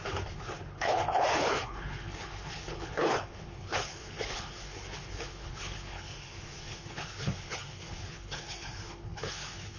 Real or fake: fake